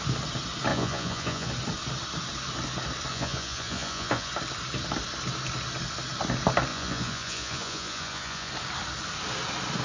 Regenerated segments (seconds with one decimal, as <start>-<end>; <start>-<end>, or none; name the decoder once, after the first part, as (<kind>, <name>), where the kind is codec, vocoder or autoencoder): 0.7-1.5 (vocoder, Vocos); 3.1-4.3; 6.7-8.5